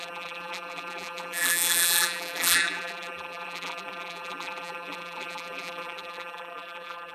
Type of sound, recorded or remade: remade